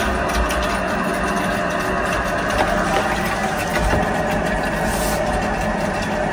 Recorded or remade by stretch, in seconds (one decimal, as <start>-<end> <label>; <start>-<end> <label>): 0.0-6.3 recorded